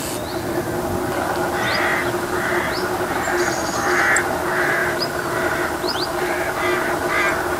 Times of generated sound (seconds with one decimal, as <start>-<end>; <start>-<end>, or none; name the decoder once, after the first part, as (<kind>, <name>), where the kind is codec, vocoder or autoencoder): 1.9-2.7 (vocoder, BigVGAN v2); 4.8-5.9

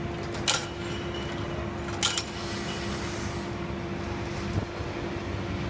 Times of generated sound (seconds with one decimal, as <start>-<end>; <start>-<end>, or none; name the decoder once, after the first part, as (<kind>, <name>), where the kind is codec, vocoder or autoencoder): none